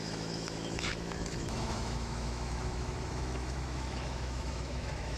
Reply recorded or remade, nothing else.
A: remade